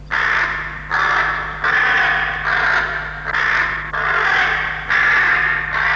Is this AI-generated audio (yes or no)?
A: no